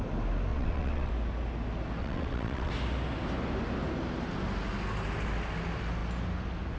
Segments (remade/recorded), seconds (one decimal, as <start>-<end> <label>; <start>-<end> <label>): 0.0-0.5 recorded; 0.5-1.1 remade; 1.1-2.0 recorded; 2.0-2.7 remade; 2.7-6.8 recorded